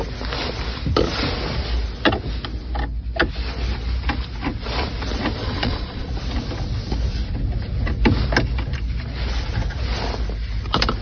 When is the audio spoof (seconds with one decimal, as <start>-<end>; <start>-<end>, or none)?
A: 5.4-6.1